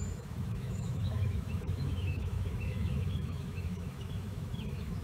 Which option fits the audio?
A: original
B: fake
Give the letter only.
B